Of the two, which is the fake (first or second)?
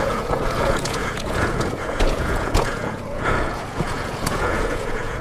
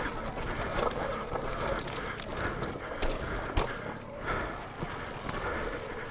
first